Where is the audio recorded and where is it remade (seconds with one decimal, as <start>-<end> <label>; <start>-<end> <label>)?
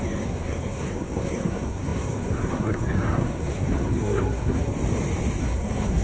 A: 0.0-4.7 remade; 4.7-5.4 recorded; 5.4-6.0 remade